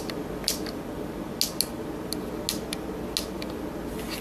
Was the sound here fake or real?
real